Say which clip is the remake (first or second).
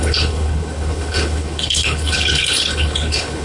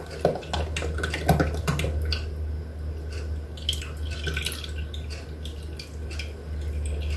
first